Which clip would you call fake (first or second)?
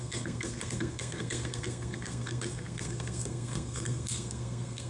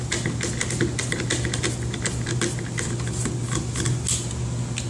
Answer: first